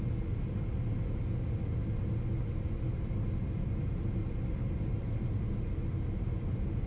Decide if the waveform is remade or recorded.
recorded